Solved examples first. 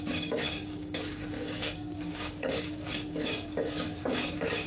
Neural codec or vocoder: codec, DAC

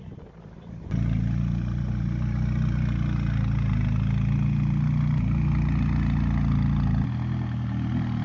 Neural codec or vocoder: none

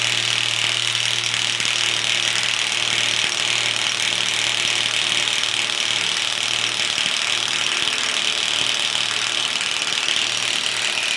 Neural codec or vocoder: none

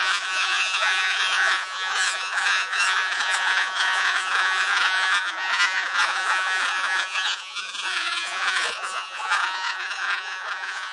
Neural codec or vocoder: vocoder, Vocos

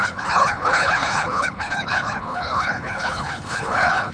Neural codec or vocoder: codec, HILCodec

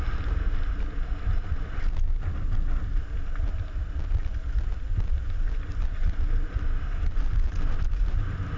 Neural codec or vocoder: none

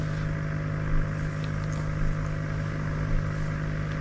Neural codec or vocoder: none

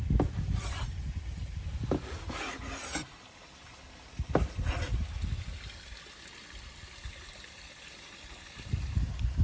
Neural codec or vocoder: none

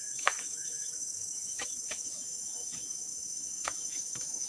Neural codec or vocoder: autoencoder, DAC-VAE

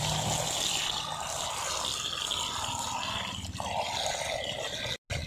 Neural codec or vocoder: none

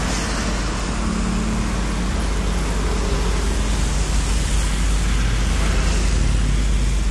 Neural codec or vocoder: none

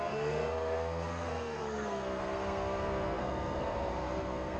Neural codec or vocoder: codec, SNAC